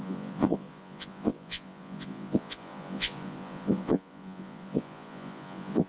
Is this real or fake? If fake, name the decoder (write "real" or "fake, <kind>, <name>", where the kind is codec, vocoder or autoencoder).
fake, vocoder, Vocos